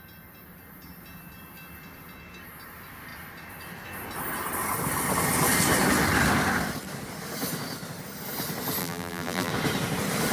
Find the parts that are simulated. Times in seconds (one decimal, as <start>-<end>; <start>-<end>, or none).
8.8-9.5